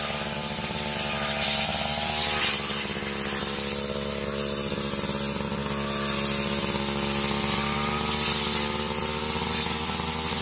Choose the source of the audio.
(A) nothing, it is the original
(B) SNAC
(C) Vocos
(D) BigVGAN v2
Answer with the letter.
A